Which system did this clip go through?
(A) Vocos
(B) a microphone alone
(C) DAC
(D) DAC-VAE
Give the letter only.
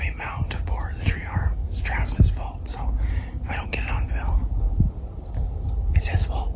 B